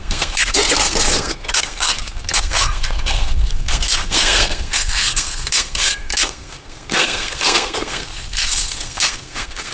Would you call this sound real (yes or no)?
no